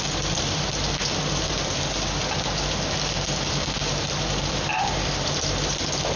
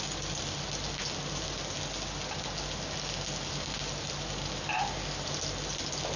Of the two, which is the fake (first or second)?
first